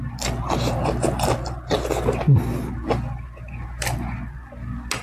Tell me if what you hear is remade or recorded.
recorded